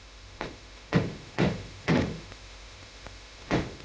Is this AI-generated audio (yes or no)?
yes